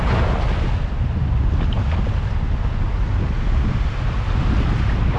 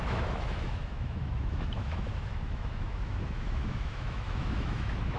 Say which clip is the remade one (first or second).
second